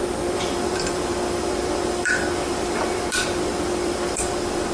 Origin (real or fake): fake